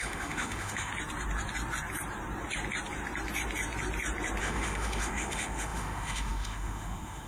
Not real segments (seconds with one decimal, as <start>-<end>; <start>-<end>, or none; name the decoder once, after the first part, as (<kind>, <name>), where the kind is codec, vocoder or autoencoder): 0.0-0.9 (autoencoder, DAC-VAE); 4.4-7.3

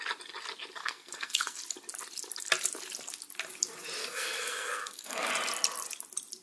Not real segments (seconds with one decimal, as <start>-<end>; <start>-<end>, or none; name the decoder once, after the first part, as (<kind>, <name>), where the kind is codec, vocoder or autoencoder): 0.8-1.6 (codec, SNAC); 4.0-5.3

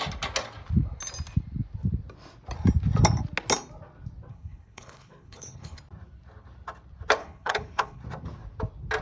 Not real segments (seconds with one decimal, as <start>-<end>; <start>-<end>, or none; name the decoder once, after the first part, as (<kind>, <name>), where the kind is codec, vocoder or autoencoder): 4.3-5.8 (codec, HILCodec); 7.2-8.0

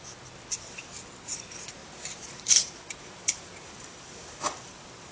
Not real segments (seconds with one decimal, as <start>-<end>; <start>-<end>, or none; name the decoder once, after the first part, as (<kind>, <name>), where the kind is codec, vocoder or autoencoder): 1.8-5.1 (vocoder, BigVGAN v2)

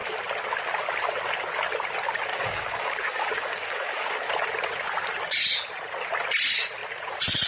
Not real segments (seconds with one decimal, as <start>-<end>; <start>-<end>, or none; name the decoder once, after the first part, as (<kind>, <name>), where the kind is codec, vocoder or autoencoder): 2.3-4.3 (codec, DAC)

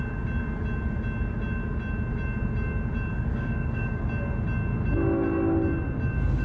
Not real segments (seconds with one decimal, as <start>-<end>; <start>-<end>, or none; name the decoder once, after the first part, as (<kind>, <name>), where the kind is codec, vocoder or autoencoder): 3.3-4.0 (codec, DAC)